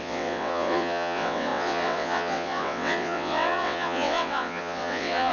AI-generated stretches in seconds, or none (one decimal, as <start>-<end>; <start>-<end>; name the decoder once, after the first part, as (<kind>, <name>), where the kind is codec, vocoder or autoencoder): 0.0-5.3 (vocoder, WaveNeXt)